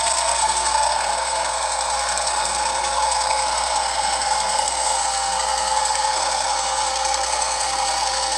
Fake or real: fake